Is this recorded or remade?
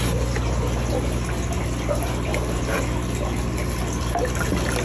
recorded